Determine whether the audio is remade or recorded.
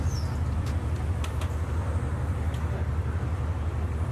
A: recorded